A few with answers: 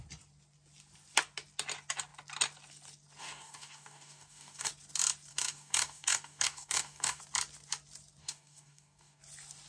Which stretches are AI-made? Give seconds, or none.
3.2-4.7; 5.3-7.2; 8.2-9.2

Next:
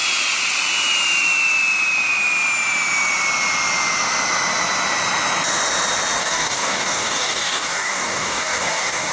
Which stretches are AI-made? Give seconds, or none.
6.2-9.1

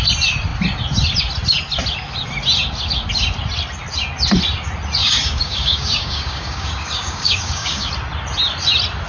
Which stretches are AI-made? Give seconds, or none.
5.0-7.9